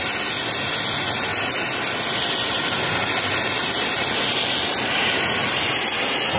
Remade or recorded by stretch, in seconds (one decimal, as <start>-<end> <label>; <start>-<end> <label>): 0.0-6.4 recorded